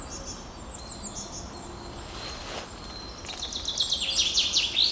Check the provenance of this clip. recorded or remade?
recorded